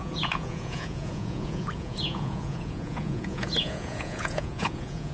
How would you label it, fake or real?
fake